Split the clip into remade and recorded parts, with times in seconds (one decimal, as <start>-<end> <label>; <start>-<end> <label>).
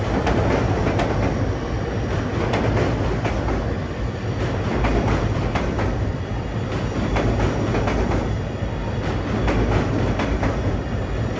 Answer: 0.0-11.4 recorded